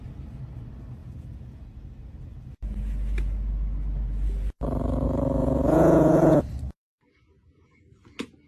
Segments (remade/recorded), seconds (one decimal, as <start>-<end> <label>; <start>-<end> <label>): 0.0-1.0 recorded; 1.0-1.6 remade; 1.6-5.4 recorded; 5.4-6.4 remade; 6.4-8.5 recorded